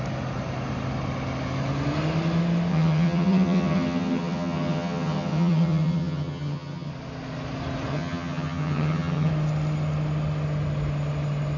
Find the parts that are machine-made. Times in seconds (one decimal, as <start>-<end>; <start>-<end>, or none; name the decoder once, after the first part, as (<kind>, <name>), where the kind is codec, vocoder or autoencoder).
2.7-6.9 (vocoder, HiFi-GAN); 7.9-9.3